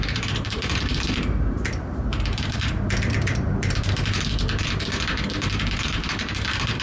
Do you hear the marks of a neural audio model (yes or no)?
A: yes